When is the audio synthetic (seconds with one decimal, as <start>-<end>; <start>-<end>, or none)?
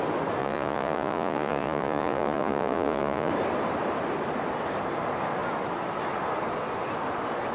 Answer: 0.4-3.3